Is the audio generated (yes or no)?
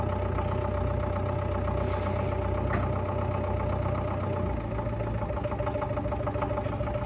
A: no